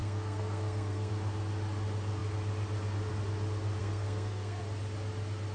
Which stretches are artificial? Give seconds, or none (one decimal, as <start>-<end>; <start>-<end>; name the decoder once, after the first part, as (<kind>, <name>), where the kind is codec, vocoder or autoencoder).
0.0-1.1 (codec, SNAC); 3.8-4.6